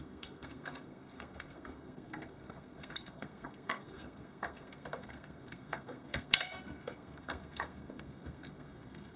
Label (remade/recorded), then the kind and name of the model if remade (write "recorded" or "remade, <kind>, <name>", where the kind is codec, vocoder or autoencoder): remade, codec, SNAC